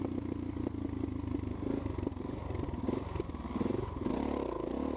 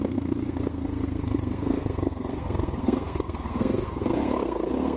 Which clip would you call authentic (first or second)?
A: first